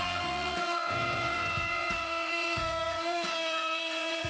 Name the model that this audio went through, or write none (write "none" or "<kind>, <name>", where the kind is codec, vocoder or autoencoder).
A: vocoder, Vocos